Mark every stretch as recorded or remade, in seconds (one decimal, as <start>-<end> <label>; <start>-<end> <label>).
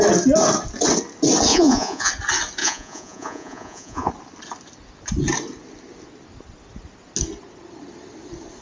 0.0-1.5 recorded; 1.5-2.1 remade; 2.1-2.6 recorded; 2.6-4.1 remade; 4.1-8.6 recorded